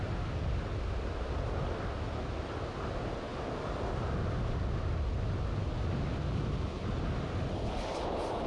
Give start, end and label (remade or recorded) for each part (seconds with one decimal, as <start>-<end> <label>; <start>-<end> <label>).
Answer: 0.0-8.5 recorded